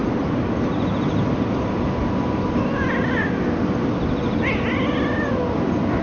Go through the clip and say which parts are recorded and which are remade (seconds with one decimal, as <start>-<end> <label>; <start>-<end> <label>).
0.0-6.0 recorded